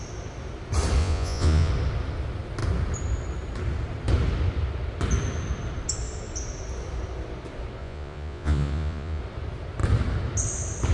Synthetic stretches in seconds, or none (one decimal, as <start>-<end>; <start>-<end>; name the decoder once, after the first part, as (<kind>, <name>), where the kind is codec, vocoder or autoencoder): 1.0-1.7 (vocoder, Vocos); 7.8-9.2